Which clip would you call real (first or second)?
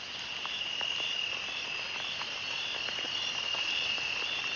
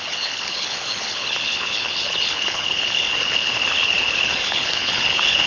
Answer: first